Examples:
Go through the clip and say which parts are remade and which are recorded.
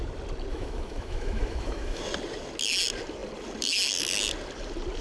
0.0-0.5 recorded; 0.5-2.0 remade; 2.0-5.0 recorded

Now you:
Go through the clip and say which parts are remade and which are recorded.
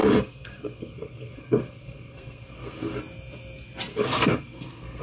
0.0-3.0 remade; 3.0-3.9 recorded; 3.9-5.0 remade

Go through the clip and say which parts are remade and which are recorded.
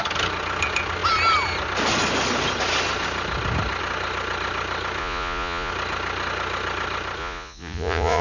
0.0-5.0 recorded; 5.0-5.7 remade; 5.7-7.2 recorded; 7.2-8.2 remade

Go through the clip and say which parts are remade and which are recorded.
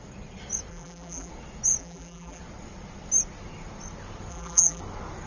0.0-0.7 recorded; 0.7-1.3 remade; 1.3-1.8 recorded; 1.8-2.4 remade; 2.4-4.3 recorded; 4.3-4.8 remade; 4.8-5.3 recorded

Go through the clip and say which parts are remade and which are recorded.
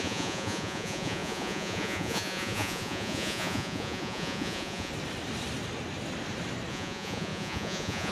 0.0-4.9 remade; 4.9-6.7 recorded; 6.7-8.1 remade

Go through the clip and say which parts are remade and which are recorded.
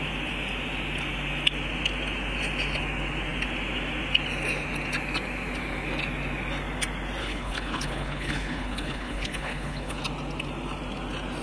0.0-7.2 recorded; 7.2-10.0 remade; 10.0-11.4 recorded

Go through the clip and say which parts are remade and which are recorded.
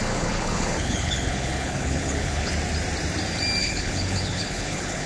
0.0-2.5 remade; 2.5-3.6 recorded; 3.6-5.1 remade